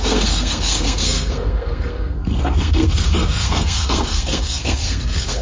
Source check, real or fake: fake